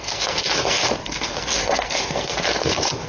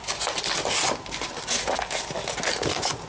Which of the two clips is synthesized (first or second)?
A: first